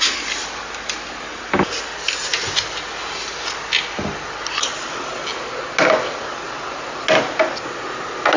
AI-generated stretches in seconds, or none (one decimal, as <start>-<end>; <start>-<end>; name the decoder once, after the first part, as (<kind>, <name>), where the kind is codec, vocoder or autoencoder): none